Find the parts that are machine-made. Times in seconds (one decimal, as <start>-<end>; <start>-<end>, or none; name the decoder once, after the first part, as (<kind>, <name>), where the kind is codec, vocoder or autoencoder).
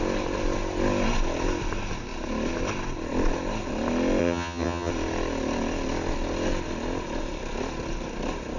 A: 4.2-4.9 (vocoder, HiFi-GAN)